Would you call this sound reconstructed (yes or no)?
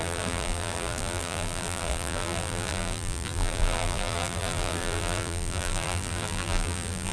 yes